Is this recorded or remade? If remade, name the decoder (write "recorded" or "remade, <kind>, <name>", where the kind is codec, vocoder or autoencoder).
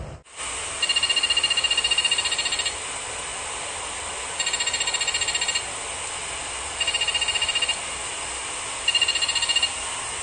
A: recorded